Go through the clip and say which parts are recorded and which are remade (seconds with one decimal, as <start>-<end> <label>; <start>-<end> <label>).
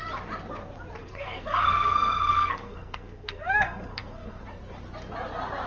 0.0-1.0 recorded; 1.0-4.4 remade; 4.4-5.7 recorded